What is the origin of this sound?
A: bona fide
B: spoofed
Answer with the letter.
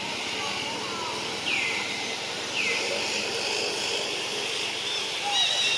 A